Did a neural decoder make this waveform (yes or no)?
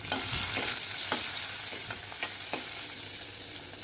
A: no